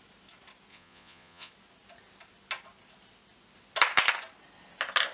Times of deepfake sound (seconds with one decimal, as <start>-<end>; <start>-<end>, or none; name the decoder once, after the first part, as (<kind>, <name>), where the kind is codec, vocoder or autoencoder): 0.7-1.5 (vocoder, Vocos)